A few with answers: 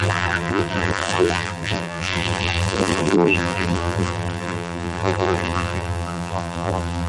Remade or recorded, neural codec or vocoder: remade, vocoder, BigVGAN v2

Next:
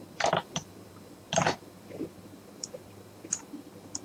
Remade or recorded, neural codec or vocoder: remade, vocoder, BigVGAN v2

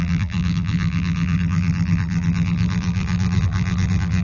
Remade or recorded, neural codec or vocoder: remade, vocoder, BigVGAN v2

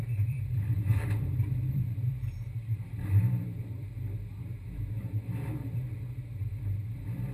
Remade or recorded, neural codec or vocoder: remade, vocoder, BigVGAN v2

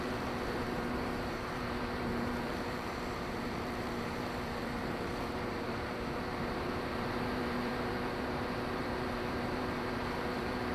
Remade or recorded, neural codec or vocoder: remade, vocoder, BigVGAN v2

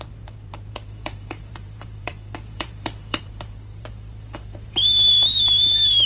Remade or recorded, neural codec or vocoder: remade, vocoder, BigVGAN v2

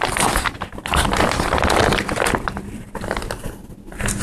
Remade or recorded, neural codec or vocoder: recorded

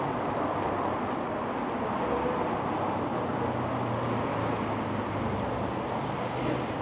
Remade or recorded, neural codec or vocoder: recorded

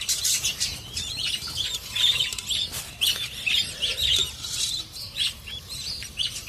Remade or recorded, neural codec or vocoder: remade, vocoder, BigVGAN v2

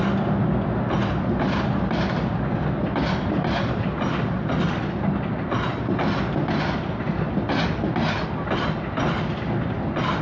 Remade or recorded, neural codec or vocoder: recorded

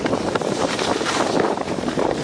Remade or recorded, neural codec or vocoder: remade, vocoder, BigVGAN v2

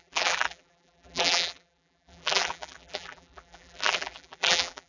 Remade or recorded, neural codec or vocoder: remade, vocoder, BigVGAN v2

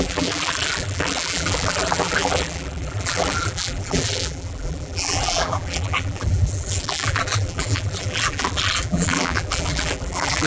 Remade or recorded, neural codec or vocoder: remade, vocoder, BigVGAN v2